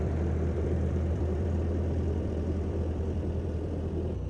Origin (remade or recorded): remade